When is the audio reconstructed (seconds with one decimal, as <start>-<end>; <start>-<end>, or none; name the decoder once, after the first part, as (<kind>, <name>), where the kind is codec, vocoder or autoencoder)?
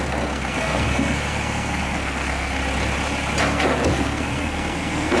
0.0-2.6 (codec, SNAC); 3.4-5.2